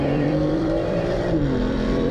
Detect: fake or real fake